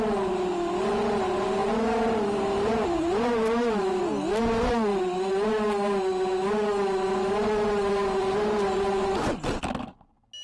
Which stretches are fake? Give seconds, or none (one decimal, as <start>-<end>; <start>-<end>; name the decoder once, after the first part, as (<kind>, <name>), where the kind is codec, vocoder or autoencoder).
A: 1.6-4.1 (vocoder, BigVGAN v2)